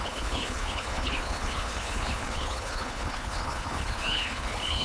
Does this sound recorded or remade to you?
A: remade